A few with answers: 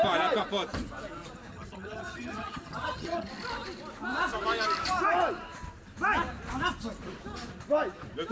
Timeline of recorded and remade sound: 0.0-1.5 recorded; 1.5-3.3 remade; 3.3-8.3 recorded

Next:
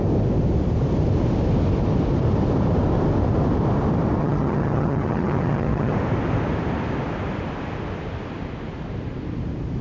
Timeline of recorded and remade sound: 0.0-4.2 recorded; 4.2-5.9 remade; 5.9-9.8 recorded